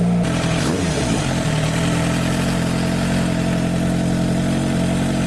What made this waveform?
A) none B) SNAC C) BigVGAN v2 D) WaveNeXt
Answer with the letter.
A